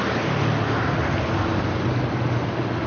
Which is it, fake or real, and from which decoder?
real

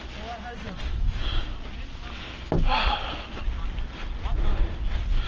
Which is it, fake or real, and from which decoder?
real